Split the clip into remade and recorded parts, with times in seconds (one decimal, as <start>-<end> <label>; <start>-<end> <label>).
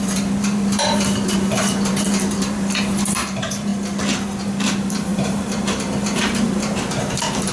0.0-3.7 remade; 3.7-4.4 recorded; 4.4-7.5 remade